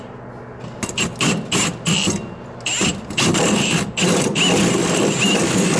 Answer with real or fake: real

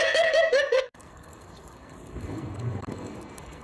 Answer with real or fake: fake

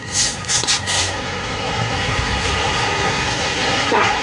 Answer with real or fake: fake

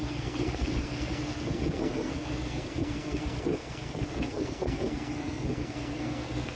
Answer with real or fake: fake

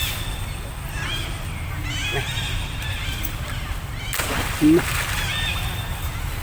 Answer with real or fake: real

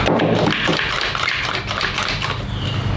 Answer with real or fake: real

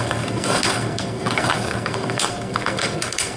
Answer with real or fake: fake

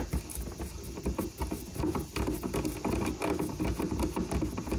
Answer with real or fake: real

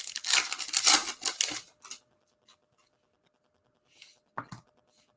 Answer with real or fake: real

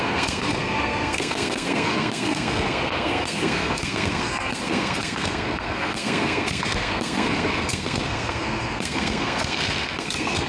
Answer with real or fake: fake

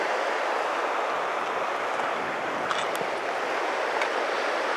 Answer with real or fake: real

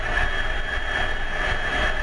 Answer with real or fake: real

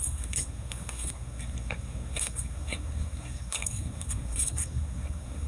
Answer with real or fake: fake